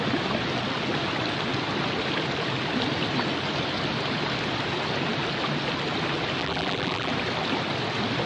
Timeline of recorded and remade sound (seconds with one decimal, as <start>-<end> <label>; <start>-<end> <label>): 0.0-6.4 recorded; 6.4-7.1 remade; 7.1-8.3 recorded